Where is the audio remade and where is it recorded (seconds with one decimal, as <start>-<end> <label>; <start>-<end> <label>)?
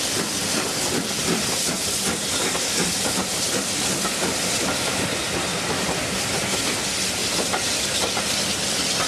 0.0-7.2 remade; 7.2-8.2 recorded; 8.2-9.1 remade